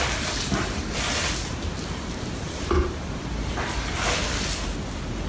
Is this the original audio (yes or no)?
yes